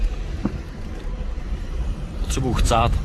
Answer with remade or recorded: remade